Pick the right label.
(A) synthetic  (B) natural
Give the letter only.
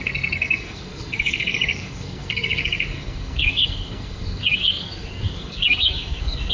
A